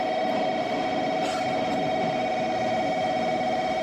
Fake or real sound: real